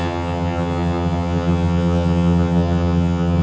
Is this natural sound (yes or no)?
no